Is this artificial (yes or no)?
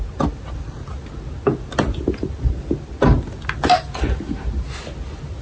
no